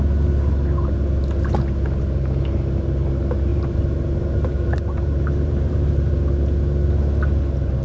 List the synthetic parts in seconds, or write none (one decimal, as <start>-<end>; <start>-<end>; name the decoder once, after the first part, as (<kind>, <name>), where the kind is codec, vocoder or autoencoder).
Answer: 3.5-6.1 (vocoder, BigVGAN v2)